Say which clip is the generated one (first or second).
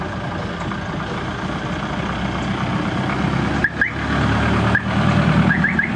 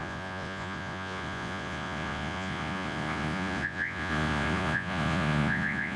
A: second